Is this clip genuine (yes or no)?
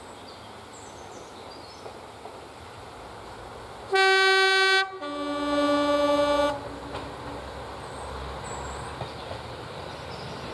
yes